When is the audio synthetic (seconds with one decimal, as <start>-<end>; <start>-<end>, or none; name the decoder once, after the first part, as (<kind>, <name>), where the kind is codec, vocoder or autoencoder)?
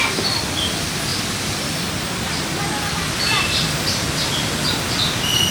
1.1-2.4 (vocoder, BigVGAN v2)